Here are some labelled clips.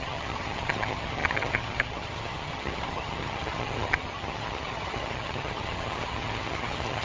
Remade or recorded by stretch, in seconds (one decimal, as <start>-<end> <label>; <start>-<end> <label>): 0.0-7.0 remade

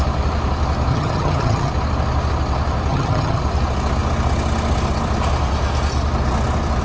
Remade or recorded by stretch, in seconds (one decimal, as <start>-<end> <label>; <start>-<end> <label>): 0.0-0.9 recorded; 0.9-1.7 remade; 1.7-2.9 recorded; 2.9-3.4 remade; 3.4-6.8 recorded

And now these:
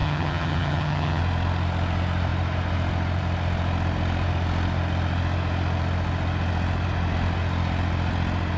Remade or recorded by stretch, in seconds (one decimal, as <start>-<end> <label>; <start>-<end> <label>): 0.0-1.2 remade; 1.2-8.6 recorded

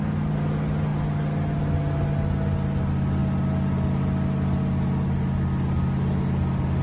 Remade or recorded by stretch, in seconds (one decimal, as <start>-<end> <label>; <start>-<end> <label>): 0.0-6.8 recorded

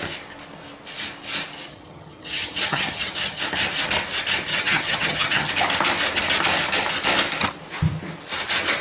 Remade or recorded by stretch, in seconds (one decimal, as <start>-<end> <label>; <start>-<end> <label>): 0.0-1.7 recorded; 1.7-3.4 remade; 3.4-4.5 recorded; 4.5-5.5 remade; 5.5-8.8 recorded

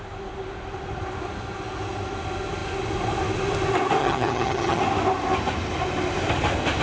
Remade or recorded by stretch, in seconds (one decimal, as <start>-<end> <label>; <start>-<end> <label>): 0.0-4.0 recorded; 4.0-4.8 remade; 4.8-6.8 recorded

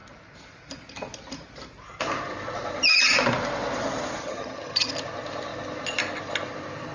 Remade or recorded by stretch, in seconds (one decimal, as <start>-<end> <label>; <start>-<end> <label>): 0.0-4.2 recorded; 4.2-4.9 remade; 4.9-6.9 recorded